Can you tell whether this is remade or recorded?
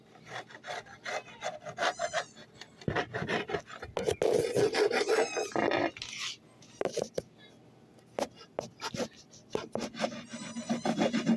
recorded